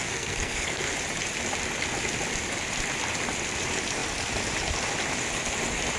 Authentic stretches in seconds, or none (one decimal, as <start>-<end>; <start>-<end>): 0.9-6.0